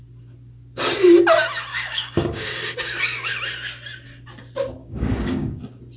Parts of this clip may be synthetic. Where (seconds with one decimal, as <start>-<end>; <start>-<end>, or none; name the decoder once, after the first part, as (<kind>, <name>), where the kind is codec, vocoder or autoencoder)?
1.7-3.3 (codec, DAC); 4.8-5.6